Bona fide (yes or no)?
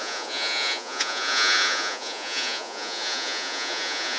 no